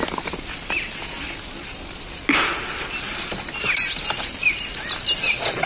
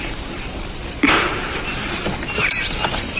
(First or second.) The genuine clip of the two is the first